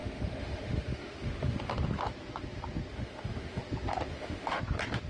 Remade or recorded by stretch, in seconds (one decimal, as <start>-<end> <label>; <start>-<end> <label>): 0.0-1.7 remade; 1.7-2.9 recorded; 2.9-3.6 remade; 3.6-4.1 recorded; 4.1-4.6 remade; 4.6-5.1 recorded